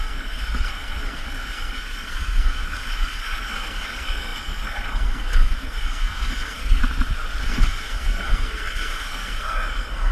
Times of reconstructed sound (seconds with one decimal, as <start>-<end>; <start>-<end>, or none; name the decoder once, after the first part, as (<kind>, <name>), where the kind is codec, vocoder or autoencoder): 0.0-6.8 (codec, SNAC); 7.4-10.1